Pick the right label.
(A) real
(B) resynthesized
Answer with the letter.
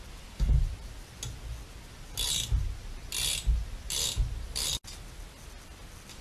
A